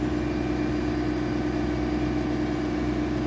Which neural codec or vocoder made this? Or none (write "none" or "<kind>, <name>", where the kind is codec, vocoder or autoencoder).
none